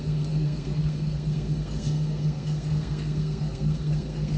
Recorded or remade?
remade